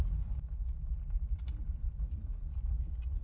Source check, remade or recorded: recorded